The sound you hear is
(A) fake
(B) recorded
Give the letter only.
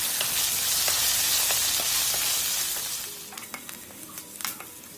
B